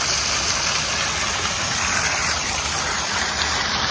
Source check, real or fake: real